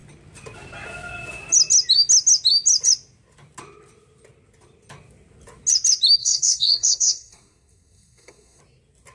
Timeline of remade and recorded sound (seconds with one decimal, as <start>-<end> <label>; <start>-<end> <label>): 0.0-6.2 recorded; 6.2-8.6 remade; 8.6-9.1 recorded